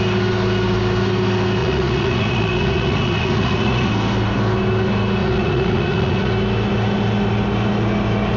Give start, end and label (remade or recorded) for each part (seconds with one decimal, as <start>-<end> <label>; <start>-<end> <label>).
0.0-1.6 recorded; 1.6-3.9 remade; 3.9-5.2 recorded; 5.2-6.3 remade; 6.3-8.4 recorded